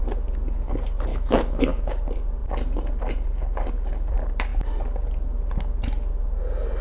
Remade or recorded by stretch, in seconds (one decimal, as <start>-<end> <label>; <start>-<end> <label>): 0.0-1.1 recorded; 1.1-1.9 remade; 1.9-6.8 recorded

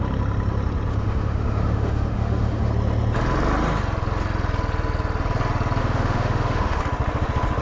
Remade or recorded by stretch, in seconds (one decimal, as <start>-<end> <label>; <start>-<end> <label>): 0.0-0.9 recorded; 0.9-2.7 remade; 2.7-5.8 recorded; 5.8-6.8 remade; 6.8-7.6 recorded

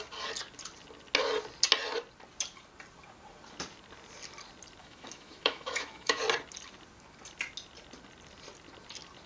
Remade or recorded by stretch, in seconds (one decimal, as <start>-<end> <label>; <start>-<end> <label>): 0.0-4.8 recorded; 4.8-6.2 remade; 6.2-9.3 recorded

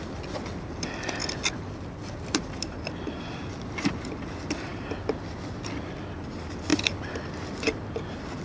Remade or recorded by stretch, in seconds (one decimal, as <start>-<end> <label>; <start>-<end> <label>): 0.0-8.4 recorded

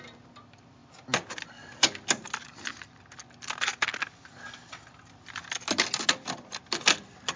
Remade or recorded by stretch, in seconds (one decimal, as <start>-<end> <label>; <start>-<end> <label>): 0.0-7.4 recorded

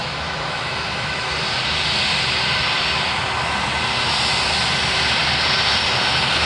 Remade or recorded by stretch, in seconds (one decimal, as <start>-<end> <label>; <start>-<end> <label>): 0.0-1.3 remade; 1.3-6.5 recorded

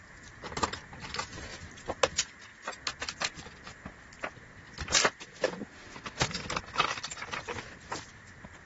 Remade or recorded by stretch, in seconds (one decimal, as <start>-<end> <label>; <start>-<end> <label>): 0.0-5.6 recorded; 5.6-6.3 remade; 6.3-8.7 recorded

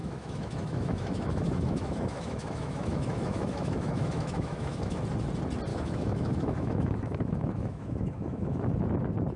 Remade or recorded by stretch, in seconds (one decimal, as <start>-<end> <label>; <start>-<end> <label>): 0.0-5.0 remade; 5.0-5.7 recorded; 5.7-8.7 remade; 8.7-9.4 recorded